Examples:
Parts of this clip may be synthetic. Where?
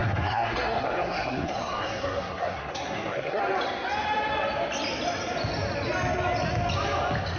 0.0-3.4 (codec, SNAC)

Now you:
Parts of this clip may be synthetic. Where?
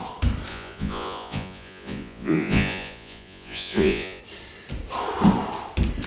0.5-4.2 (vocoder, Vocos)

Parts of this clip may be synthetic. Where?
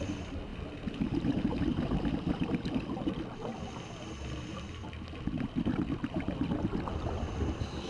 none